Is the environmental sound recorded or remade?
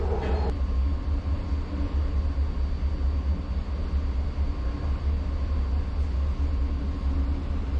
recorded